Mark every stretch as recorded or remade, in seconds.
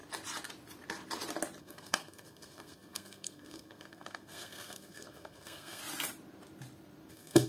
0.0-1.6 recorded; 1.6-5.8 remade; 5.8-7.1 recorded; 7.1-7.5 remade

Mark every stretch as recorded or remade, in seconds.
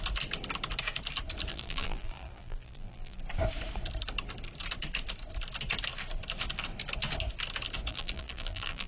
0.0-1.5 recorded; 1.5-3.2 remade; 3.2-7.9 recorded; 7.9-8.9 remade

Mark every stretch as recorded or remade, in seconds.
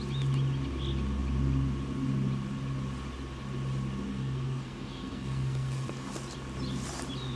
0.0-4.1 recorded; 4.1-6.1 remade; 6.1-7.4 recorded